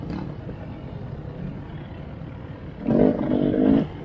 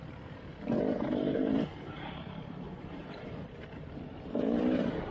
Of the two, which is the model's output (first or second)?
second